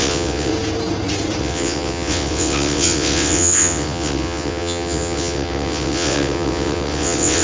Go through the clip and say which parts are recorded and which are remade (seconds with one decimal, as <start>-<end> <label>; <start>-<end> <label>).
0.0-0.5 remade; 0.5-1.4 recorded; 1.4-7.4 remade